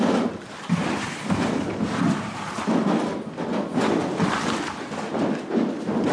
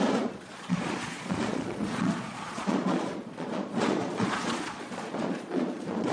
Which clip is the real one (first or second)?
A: first